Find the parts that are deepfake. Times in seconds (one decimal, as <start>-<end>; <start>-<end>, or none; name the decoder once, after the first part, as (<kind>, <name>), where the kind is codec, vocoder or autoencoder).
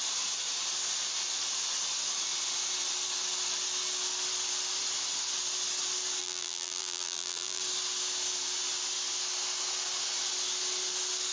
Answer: 6.2-7.6 (vocoder, BigVGAN v2)